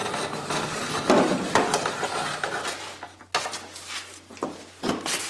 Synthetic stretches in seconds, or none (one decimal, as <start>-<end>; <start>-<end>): none